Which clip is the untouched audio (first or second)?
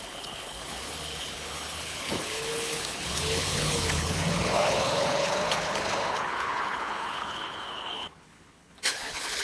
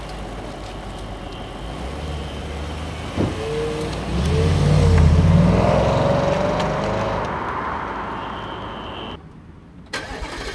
second